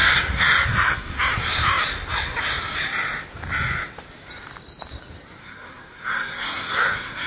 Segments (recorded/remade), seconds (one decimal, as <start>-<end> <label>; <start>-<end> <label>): 0.0-1.2 remade; 1.2-5.4 recorded; 5.4-7.3 remade